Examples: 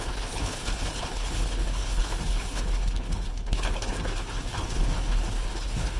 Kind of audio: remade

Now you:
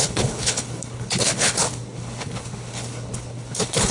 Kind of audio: remade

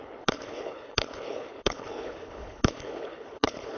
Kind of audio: remade